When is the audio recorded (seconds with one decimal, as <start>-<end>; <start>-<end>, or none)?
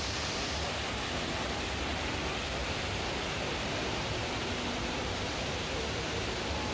0.0-2.6; 5.8-6.7